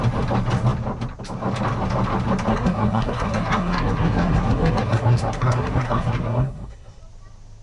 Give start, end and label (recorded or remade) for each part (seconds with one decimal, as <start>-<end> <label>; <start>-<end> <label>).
0.0-2.5 recorded; 2.5-7.0 remade; 7.0-7.6 recorded